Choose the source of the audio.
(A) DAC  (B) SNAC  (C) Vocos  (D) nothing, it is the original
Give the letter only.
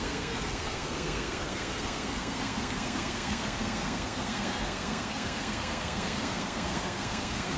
B